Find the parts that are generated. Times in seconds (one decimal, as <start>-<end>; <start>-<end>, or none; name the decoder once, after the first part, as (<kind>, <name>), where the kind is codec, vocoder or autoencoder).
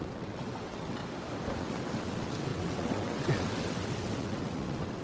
0.0-1.0 (vocoder, WaveNeXt); 1.6-5.0